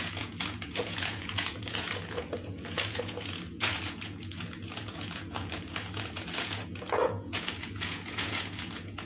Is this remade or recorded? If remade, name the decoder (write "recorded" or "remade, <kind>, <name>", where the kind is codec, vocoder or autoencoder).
remade, vocoder, Vocos